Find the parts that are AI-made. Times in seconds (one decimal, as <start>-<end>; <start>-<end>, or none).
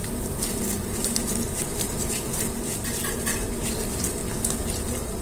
0.0-4.2; 4.8-5.2